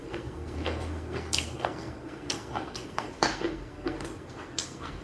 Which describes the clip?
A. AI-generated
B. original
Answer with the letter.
A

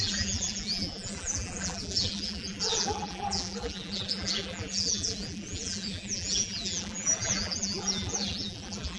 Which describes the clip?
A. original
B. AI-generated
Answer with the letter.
B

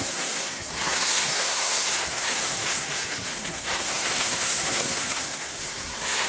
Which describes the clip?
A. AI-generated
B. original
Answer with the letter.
A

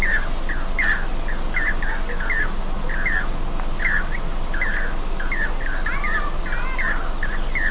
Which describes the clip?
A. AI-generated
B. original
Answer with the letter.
B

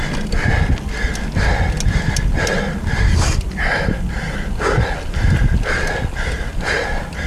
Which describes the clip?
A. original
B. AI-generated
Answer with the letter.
A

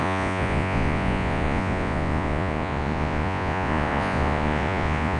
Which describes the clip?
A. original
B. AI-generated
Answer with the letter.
B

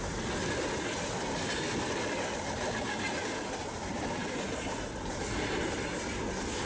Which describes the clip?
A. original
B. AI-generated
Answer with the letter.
A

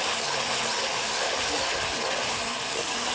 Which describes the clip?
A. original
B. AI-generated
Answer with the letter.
A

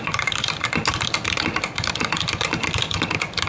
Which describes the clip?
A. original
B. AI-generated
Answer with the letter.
A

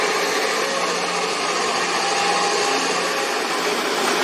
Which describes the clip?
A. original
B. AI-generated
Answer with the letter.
A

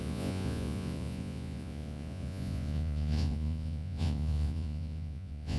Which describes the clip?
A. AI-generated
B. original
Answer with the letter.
A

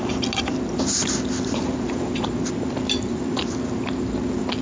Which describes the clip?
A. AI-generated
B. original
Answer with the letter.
B